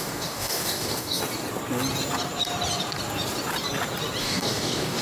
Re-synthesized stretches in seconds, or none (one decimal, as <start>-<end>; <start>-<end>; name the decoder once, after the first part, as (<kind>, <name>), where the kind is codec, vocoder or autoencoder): 0.0-1.2 (codec, DAC); 4.2-5.0